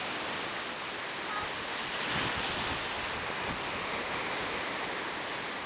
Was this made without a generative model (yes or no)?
yes